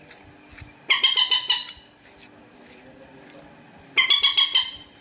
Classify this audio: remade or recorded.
recorded